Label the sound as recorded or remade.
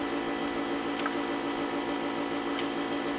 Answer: recorded